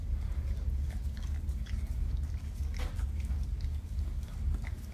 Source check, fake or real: fake